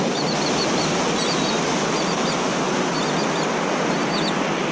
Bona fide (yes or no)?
yes